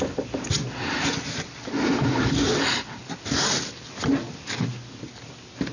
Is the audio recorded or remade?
recorded